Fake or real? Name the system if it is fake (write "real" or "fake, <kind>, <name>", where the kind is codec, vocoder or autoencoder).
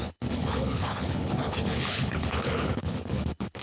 fake, codec, HILCodec